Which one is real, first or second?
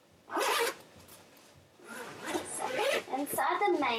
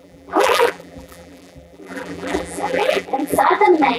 first